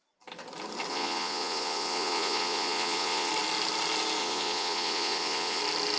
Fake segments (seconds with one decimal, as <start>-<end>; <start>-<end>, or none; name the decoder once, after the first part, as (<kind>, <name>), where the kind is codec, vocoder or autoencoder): 0.9-3.3 (vocoder, Vocos); 4.2-5.6